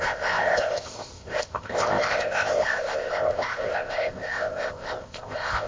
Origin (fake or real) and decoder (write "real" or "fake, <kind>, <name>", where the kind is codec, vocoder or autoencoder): fake, codec, ZipCodec